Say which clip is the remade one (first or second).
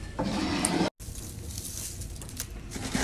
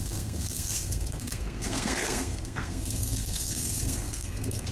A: second